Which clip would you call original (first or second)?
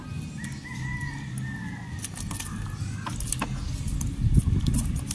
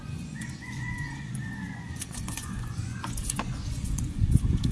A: first